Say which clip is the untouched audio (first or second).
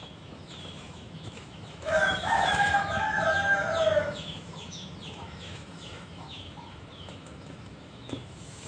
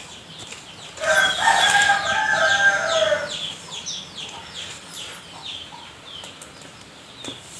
second